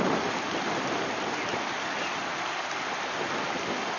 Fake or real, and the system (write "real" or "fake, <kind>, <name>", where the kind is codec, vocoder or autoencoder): real